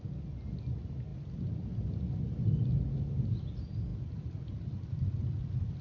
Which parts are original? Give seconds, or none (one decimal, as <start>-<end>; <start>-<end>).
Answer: 0.0-5.8